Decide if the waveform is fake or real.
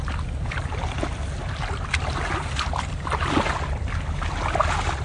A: real